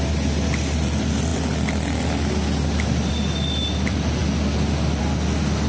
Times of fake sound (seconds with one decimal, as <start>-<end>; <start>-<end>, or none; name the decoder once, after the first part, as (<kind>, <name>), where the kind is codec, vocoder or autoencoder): none